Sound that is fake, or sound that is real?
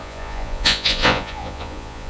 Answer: fake